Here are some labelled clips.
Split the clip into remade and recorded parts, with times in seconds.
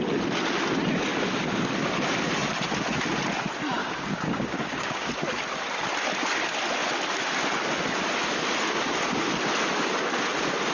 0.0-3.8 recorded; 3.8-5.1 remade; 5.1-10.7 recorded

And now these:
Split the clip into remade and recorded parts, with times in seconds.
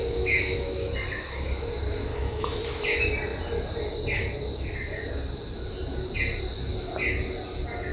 0.0-0.9 remade; 0.9-2.1 recorded; 2.1-2.6 remade; 2.6-7.9 recorded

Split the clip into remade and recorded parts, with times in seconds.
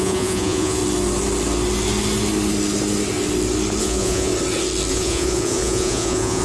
0.0-0.8 remade; 0.8-3.8 recorded; 3.8-4.3 remade; 4.3-4.9 recorded; 4.9-6.4 remade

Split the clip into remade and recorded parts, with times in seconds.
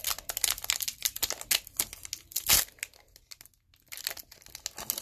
0.0-5.0 recorded